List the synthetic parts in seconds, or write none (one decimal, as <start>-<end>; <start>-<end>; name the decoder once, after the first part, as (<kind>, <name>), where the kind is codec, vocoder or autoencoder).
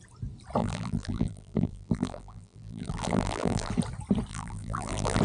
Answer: 0.6-3.7 (vocoder, BigVGAN v2); 4.3-5.2